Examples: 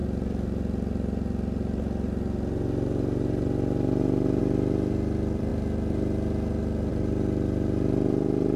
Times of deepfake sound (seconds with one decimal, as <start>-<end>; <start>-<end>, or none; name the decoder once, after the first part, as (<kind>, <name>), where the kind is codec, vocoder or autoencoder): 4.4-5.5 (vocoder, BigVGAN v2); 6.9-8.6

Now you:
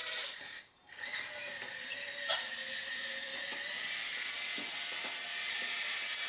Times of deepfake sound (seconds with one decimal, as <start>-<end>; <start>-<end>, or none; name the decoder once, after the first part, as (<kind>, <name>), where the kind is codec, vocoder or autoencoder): 0.0-3.3 (vocoder, BigVGAN v2); 5.3-6.3

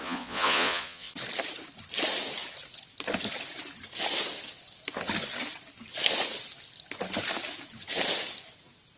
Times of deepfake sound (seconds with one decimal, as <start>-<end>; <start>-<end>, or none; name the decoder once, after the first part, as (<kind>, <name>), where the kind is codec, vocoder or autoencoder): 0.0-1.1 (vocoder, Vocos)